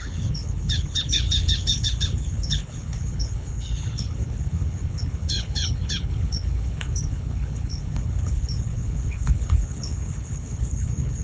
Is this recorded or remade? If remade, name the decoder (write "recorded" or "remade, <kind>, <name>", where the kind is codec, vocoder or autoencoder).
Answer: remade, codec, HILCodec